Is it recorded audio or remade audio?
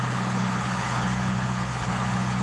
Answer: remade